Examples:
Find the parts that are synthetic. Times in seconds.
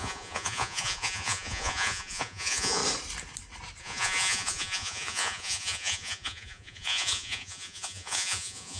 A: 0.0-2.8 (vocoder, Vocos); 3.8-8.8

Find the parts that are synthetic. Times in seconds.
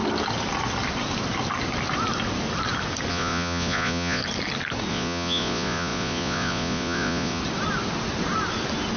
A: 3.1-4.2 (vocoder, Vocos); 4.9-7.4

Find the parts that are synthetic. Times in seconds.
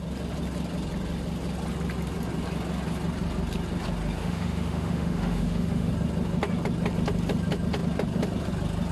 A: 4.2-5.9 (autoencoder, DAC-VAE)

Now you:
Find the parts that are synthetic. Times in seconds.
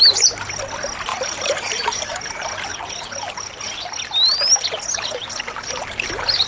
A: 1.1-2.2 (vocoder, BigVGAN v2)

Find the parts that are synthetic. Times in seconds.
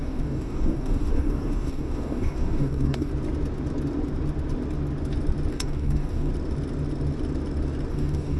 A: 0.0-3.1 (codec, DAC); 5.5-6.3; 7.9-8.4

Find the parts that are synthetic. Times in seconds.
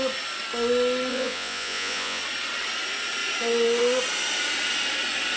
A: 1.1-2.2 (vocoder, Vocos)